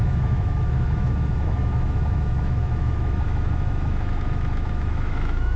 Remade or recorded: remade